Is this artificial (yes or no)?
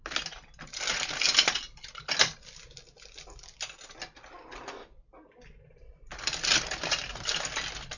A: no